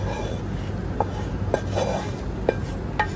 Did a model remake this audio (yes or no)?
no